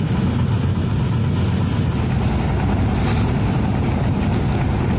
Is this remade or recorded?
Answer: recorded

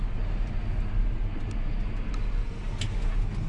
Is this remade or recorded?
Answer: recorded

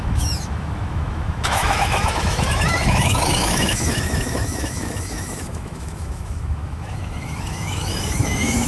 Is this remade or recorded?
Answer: remade